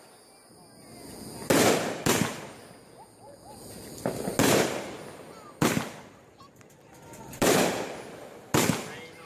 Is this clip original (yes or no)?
yes